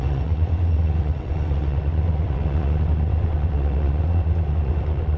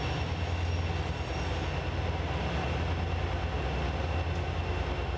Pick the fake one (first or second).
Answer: first